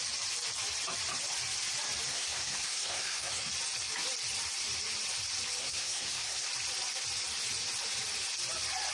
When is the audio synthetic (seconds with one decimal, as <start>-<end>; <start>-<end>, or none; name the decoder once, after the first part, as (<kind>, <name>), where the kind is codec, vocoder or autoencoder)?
2.1-3.5 (codec, SNAC); 5.6-6.5